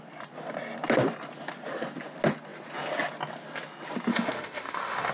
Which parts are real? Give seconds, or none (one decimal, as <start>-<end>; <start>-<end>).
0.0-4.1